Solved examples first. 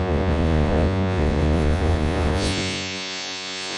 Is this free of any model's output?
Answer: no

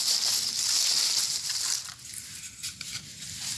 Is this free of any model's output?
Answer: yes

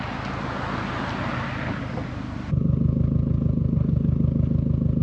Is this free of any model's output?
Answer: yes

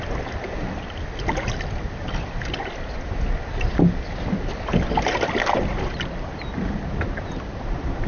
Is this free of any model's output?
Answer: yes